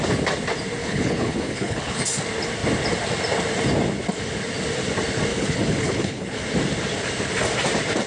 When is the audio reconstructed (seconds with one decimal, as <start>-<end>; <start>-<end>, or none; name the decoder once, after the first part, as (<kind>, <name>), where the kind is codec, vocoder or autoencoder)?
0.8-2.0 (codec, HILCodec); 5.3-6.4